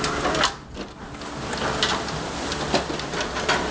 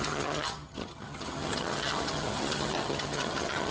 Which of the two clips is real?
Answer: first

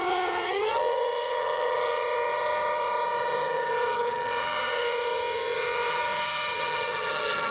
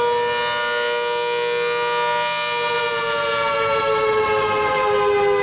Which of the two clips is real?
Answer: second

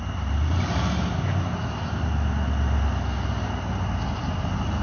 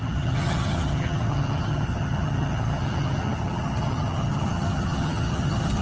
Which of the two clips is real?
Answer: first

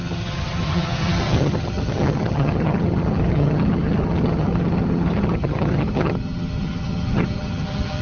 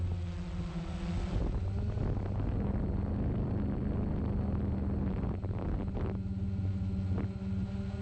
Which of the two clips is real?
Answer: second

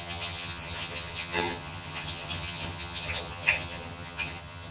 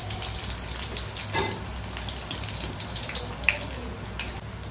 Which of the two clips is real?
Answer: second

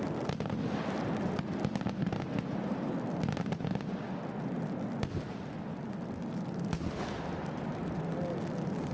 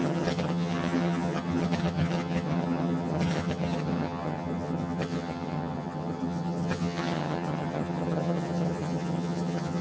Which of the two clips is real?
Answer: first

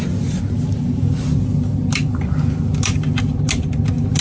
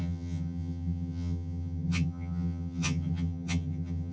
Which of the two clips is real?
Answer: first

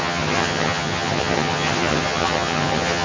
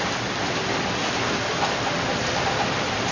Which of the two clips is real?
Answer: second